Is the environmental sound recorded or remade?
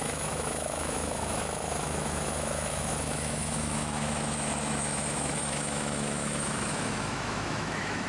remade